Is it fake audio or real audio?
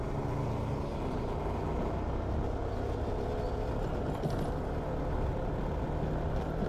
real